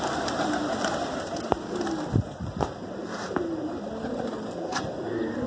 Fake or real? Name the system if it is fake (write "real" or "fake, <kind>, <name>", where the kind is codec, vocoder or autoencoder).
real